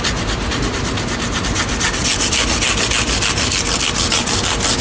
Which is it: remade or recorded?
recorded